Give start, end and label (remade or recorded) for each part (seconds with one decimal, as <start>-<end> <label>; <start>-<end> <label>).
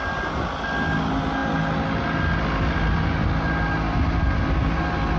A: 0.0-5.2 recorded